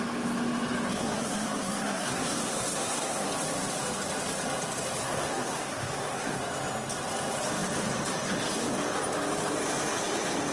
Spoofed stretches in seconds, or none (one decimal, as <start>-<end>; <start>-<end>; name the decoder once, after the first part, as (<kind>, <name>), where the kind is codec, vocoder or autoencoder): 0.9-3.3 (codec, SNAC); 5.0-6.4